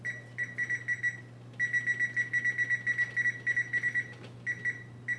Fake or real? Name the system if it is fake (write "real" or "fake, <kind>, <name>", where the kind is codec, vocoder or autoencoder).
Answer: real